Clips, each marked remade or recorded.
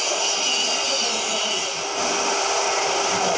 recorded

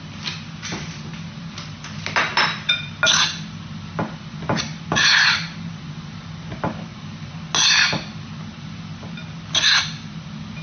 recorded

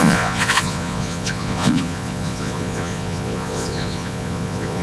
remade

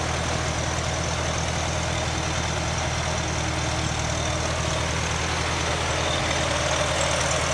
recorded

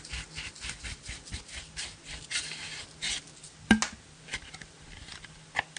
recorded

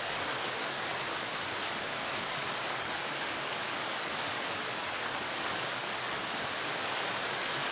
remade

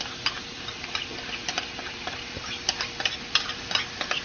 recorded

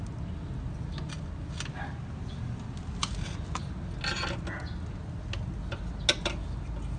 recorded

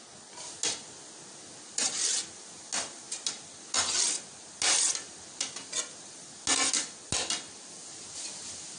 recorded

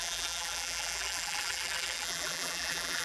remade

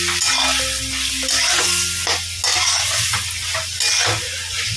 recorded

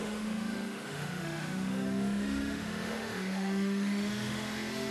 remade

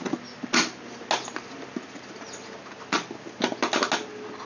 recorded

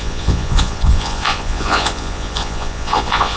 remade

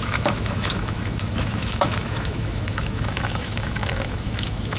remade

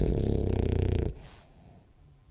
remade